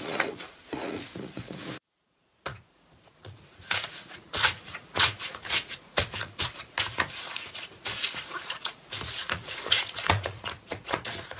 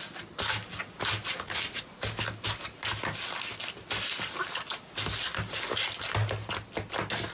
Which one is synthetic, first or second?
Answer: first